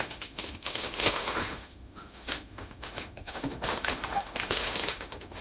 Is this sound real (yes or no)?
no